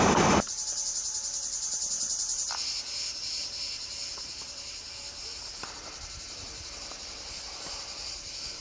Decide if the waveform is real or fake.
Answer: fake